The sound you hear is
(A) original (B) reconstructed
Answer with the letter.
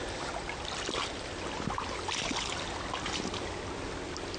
A